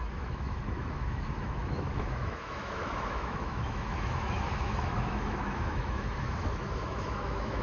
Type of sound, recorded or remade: remade